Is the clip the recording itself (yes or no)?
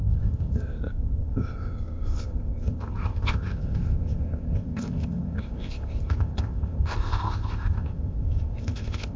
no